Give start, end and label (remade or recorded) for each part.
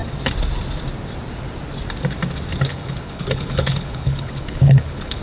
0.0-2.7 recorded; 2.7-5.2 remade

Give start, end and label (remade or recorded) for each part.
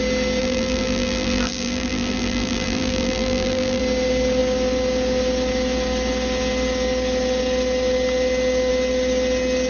0.0-0.4 recorded; 0.4-3.8 remade; 3.8-9.7 recorded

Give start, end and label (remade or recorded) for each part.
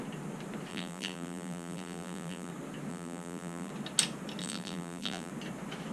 0.0-0.7 recorded; 0.7-2.5 remade; 2.5-2.9 recorded; 2.9-3.7 remade; 3.7-4.4 recorded; 4.4-5.3 remade; 5.3-5.9 recorded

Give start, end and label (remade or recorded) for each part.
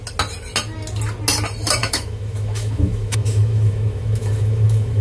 0.0-1.8 recorded; 1.8-5.0 remade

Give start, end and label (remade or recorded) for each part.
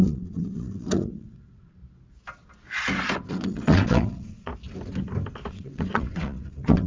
0.0-1.8 remade; 1.8-3.3 recorded; 3.3-4.5 remade; 4.5-5.5 recorded; 5.5-6.9 remade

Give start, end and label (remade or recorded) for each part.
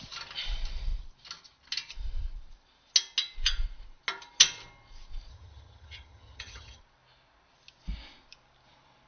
0.0-5.3 recorded; 5.3-6.8 remade; 6.8-9.1 recorded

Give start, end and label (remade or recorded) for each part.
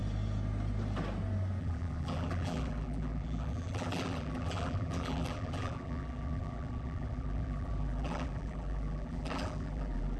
0.0-1.6 recorded; 1.6-10.2 remade